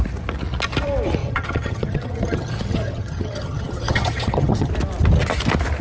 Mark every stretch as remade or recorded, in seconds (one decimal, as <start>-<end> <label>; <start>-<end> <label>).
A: 0.0-1.2 recorded; 1.2-4.7 remade; 4.7-5.8 recorded